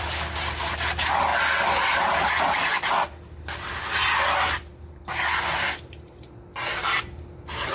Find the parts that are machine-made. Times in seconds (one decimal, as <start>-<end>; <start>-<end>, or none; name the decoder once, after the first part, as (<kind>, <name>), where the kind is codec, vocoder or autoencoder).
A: none